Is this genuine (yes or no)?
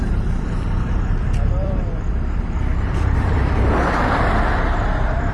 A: no